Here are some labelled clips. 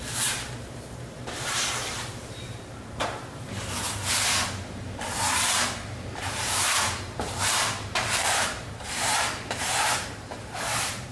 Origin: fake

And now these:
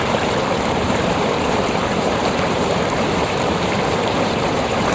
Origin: fake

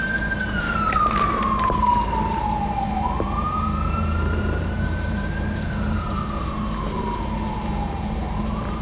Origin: fake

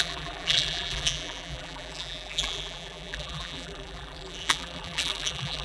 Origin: fake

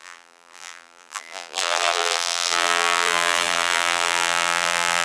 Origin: fake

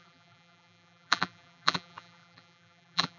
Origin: fake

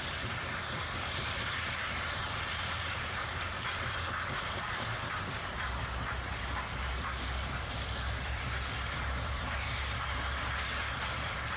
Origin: fake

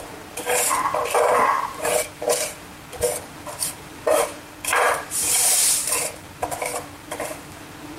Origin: fake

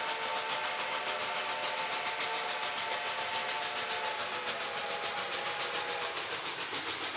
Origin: real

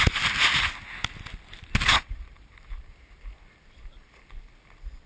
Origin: real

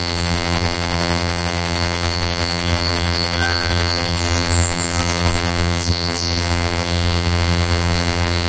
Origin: fake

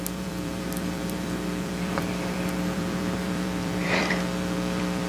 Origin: fake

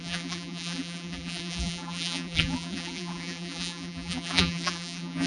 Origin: fake